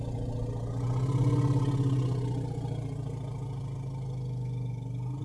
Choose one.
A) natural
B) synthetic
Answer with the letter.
A